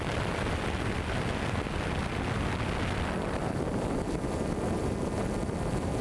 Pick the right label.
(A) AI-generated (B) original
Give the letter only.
B